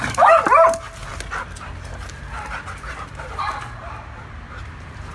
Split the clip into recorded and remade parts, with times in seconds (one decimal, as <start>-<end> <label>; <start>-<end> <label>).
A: 0.0-5.1 recorded